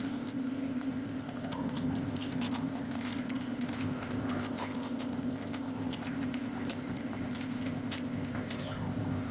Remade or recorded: remade